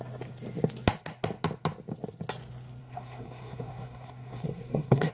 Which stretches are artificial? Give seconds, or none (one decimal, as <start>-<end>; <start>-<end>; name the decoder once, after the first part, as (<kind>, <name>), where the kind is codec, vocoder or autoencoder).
2.8-5.1 (codec, SNAC)